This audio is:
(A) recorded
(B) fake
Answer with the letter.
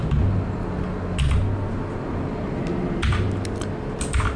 A